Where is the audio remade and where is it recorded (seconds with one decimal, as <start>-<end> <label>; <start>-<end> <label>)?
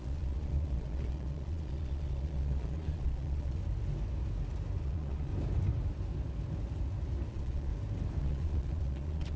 0.0-3.6 remade; 3.6-4.8 recorded; 4.8-5.3 remade; 5.3-7.3 recorded; 7.3-7.7 remade; 7.7-8.2 recorded; 8.2-9.4 remade